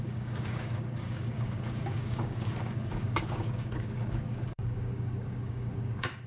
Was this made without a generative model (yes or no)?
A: no